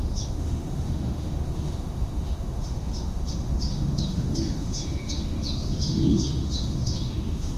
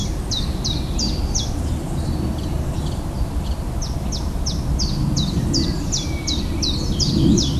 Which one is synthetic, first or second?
first